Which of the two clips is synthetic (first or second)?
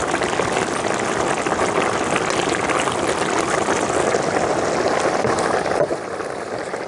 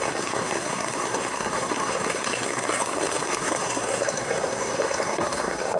second